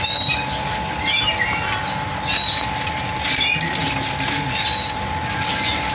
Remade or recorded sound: recorded